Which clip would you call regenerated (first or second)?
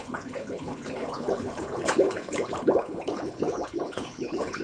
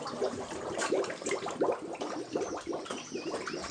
first